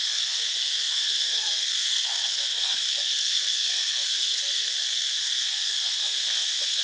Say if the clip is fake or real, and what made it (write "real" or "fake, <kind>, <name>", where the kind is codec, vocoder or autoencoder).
fake, codec, SNAC